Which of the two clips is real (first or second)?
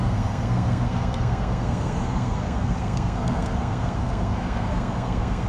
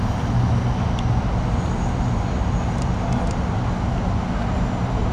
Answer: second